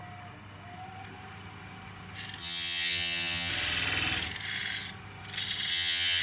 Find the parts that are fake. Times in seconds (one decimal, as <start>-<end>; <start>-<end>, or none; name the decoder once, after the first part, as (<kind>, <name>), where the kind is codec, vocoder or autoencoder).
2.4-3.5 (vocoder, HiFi-GAN); 5.7-6.2